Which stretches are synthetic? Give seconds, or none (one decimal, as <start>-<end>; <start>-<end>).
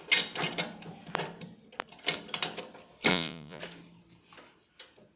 3.1-3.6